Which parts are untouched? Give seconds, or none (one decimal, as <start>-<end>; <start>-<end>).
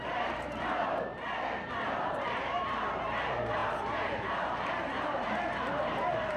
1.1-1.7